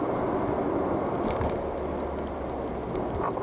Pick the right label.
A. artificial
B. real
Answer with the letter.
B